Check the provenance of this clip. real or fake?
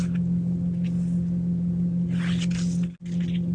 real